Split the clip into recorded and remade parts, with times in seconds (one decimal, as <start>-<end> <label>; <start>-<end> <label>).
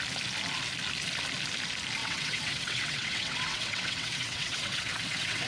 0.0-2.0 recorded; 2.0-5.5 remade